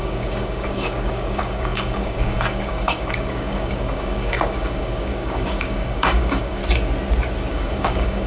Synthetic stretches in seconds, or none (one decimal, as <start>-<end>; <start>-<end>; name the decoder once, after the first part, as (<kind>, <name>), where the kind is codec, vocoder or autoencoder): 0.0-6.6 (codec, DAC); 7.5-8.3